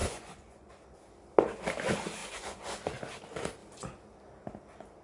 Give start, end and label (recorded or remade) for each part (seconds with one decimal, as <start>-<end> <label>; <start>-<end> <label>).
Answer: 0.0-0.7 remade; 0.7-2.2 recorded; 2.2-3.0 remade; 3.0-5.0 recorded